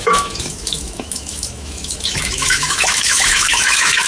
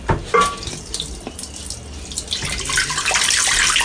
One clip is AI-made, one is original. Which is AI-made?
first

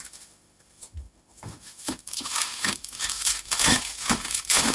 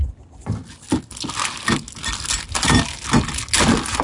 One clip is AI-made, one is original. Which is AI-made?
first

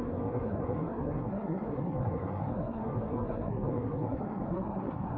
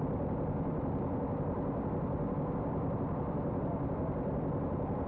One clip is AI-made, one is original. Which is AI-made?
first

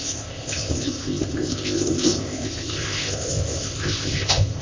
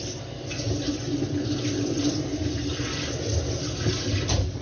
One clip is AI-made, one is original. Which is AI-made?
first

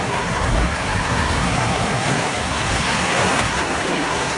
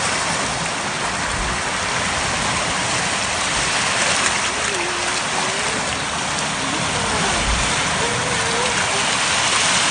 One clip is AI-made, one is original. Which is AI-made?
first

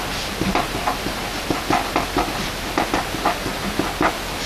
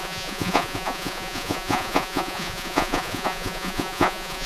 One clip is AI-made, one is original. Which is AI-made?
second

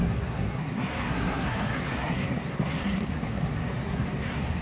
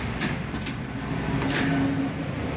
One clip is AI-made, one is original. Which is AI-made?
first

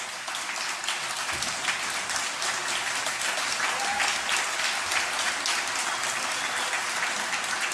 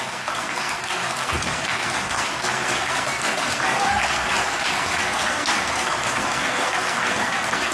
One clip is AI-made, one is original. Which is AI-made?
second